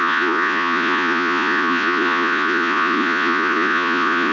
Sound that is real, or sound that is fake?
fake